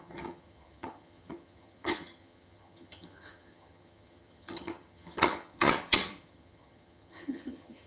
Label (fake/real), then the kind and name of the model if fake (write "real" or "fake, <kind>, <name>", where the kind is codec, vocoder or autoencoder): fake, vocoder, HiFi-GAN